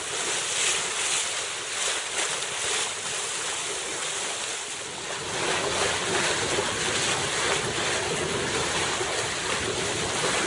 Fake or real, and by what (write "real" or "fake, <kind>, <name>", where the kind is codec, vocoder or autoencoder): real